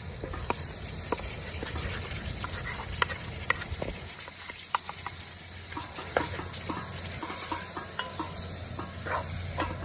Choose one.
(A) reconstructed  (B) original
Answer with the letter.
B